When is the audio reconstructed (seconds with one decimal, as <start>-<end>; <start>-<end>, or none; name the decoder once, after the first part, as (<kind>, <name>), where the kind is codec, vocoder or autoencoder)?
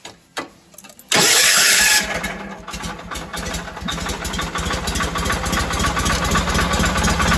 1.3-1.8 (codec, HILCodec)